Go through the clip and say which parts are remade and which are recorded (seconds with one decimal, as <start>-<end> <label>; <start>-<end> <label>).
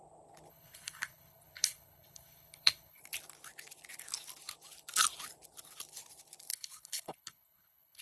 0.0-0.5 recorded; 0.5-3.0 remade; 3.0-6.5 recorded; 6.5-8.0 remade